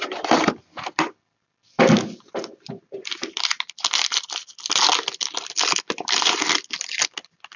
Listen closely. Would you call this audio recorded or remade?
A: recorded